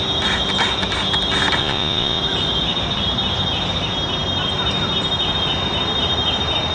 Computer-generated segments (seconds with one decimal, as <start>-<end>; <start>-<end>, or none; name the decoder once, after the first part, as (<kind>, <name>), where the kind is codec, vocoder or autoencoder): 1.6-2.2 (vocoder, Vocos)